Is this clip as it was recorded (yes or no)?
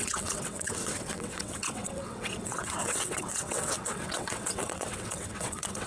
no